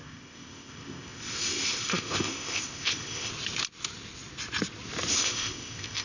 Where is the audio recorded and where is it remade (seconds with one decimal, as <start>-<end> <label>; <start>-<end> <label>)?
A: 0.0-3.3 remade; 3.3-5.1 recorded; 5.1-6.0 remade